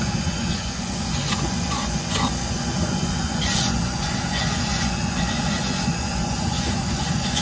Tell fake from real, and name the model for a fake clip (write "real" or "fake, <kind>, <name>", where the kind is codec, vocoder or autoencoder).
fake, vocoder, Vocos